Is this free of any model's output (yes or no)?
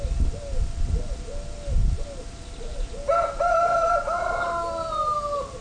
yes